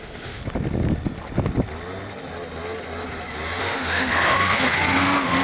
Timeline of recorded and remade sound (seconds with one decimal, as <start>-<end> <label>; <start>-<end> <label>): 0.0-0.4 remade; 0.4-3.6 recorded; 3.6-5.4 remade